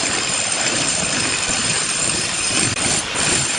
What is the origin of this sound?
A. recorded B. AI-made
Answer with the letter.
B